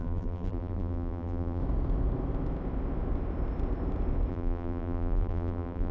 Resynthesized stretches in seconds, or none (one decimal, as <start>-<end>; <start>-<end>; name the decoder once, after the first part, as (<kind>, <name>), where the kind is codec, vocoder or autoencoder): 0.0-1.6 (vocoder, BigVGAN v2); 4.3-5.9